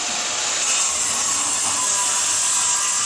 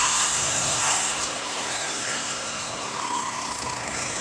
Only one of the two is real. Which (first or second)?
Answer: first